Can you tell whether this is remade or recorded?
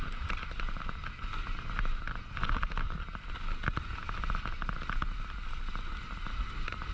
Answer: recorded